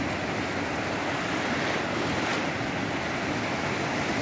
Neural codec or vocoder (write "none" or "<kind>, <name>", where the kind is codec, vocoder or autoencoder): none